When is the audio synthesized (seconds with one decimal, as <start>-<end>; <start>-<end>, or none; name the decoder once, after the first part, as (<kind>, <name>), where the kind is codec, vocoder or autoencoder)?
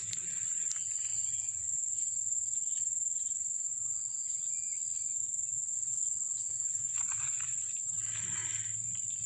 1.1-2.4 (vocoder, Vocos); 3.7-4.4; 5.2-7.6